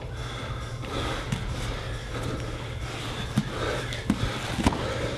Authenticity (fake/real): real